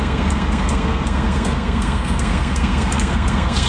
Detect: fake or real fake